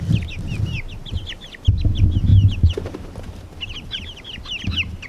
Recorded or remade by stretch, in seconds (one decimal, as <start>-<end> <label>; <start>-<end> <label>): 0.0-2.3 recorded; 2.3-4.0 remade; 4.0-5.1 recorded